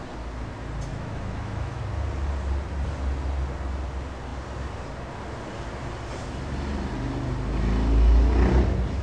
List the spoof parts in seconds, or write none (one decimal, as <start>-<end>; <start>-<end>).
0.9-1.8